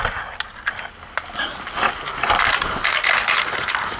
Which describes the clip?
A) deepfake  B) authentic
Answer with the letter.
B